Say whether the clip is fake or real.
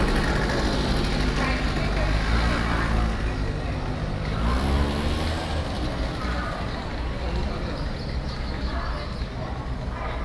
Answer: real